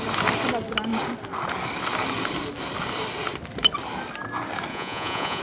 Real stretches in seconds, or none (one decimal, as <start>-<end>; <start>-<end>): 0.0-4.7